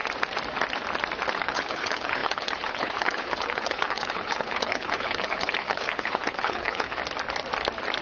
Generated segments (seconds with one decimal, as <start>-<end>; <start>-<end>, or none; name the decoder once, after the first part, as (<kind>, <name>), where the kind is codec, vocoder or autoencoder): 1.4-7.0 (codec, HILCodec)